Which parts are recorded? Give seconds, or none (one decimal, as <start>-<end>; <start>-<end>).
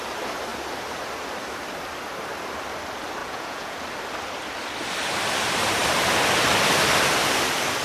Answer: 0.0-3.2; 3.8-7.8